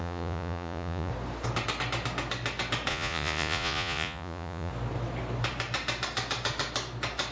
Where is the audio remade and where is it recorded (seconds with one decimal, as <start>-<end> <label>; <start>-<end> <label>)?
0.0-1.1 remade; 1.1-2.9 recorded; 2.9-4.7 remade; 4.7-7.3 recorded